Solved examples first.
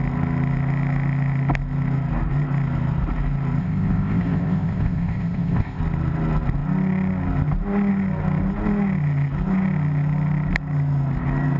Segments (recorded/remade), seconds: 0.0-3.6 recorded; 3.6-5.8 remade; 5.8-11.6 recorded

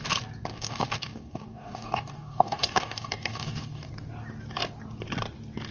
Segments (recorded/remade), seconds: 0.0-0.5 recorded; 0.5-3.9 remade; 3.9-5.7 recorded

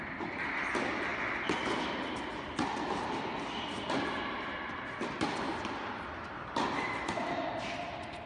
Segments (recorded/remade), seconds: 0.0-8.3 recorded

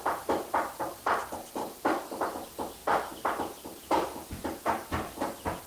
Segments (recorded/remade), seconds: 0.0-1.6 recorded; 1.6-2.2 remade; 2.2-5.7 recorded

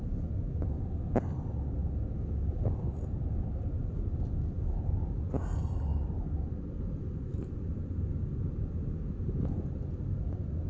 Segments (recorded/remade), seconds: 0.0-10.7 recorded

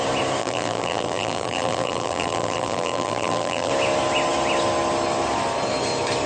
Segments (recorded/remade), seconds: 0.0-0.4 recorded; 0.4-3.7 remade; 3.7-6.3 recorded

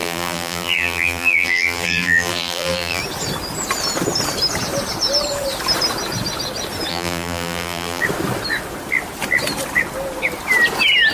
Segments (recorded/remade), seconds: 0.0-3.0 remade; 3.0-6.9 recorded; 6.9-8.0 remade; 8.0-11.1 recorded